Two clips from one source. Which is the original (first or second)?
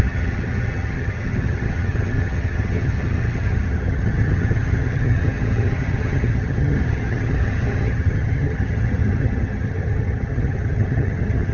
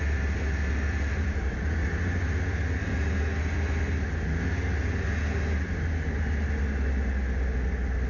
second